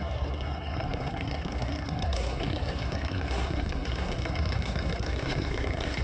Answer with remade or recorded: remade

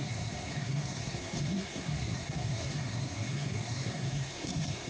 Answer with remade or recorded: remade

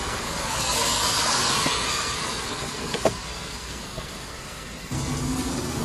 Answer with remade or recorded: remade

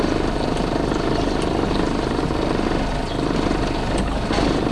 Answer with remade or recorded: recorded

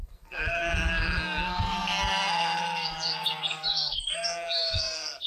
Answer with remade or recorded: remade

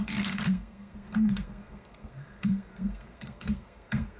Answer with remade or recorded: remade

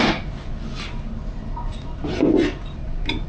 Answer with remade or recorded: recorded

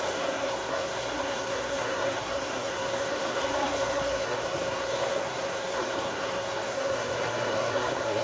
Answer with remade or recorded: remade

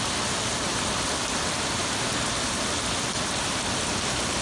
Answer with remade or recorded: recorded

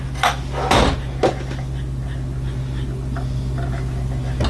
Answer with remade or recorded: recorded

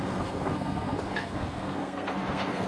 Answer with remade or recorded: remade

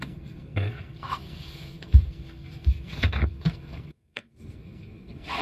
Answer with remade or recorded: remade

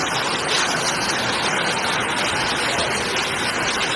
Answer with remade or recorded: recorded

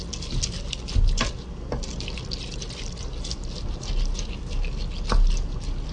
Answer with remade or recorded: recorded